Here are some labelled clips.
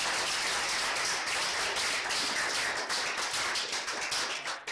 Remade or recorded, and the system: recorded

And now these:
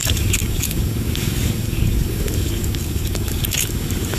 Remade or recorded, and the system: remade, codec, DAC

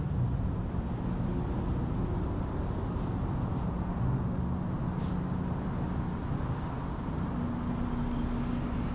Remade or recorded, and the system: recorded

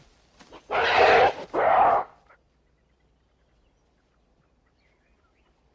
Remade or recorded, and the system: remade, vocoder, BigVGAN v2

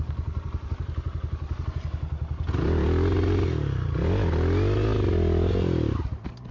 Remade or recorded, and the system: recorded